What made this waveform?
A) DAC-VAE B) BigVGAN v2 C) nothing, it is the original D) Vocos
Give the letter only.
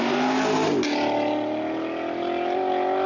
C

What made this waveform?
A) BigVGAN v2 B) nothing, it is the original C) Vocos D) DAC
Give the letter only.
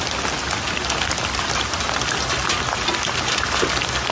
B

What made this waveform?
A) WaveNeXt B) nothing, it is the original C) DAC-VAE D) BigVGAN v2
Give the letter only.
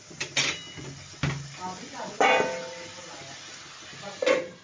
B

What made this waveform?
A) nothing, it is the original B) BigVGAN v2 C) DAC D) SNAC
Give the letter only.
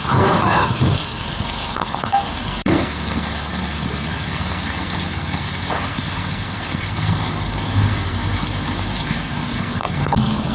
D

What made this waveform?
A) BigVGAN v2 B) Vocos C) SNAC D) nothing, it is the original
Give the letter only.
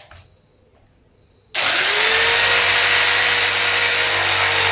D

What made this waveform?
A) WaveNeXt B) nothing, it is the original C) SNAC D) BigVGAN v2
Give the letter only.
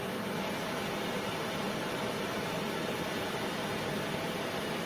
D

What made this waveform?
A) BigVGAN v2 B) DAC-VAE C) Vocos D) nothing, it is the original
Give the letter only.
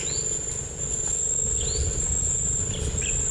D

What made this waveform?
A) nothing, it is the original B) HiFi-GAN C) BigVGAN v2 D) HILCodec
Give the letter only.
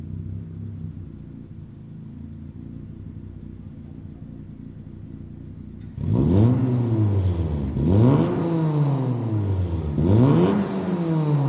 A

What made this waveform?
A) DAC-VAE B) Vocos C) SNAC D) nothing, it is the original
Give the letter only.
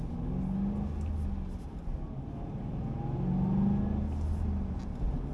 D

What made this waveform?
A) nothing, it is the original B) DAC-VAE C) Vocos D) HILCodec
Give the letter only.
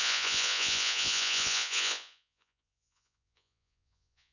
C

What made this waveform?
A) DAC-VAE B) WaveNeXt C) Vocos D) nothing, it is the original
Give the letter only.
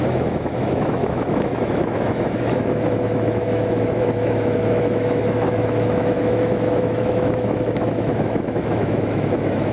A